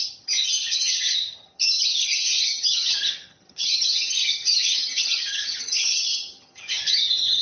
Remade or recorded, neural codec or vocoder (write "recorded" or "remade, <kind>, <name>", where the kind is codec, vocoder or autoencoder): remade, vocoder, HiFi-GAN